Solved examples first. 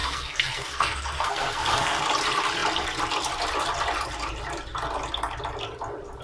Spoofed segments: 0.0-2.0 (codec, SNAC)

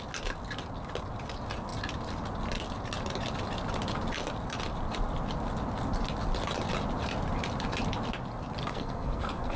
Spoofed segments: 8.6-9.6 (codec, SNAC)

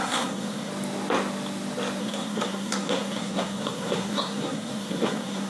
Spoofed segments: 0.0-0.7 (codec, SNAC); 2.0-5.5

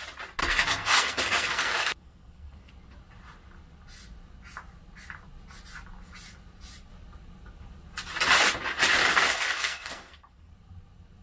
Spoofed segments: 0.4-2.7 (codec, SNAC); 9.0-10.5

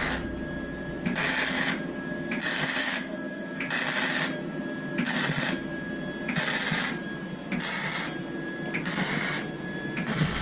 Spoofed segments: 2.8-3.6 (codec, SNAC)

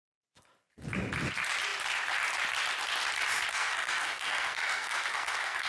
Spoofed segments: 3.5-5.7 (codec, SNAC)